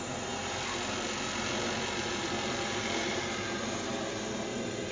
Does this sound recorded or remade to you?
recorded